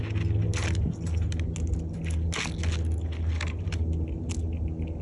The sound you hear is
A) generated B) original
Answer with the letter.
B